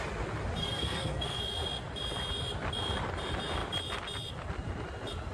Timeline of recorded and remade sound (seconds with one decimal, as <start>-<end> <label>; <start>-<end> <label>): 0.0-0.6 recorded; 0.6-1.4 remade; 1.4-5.3 recorded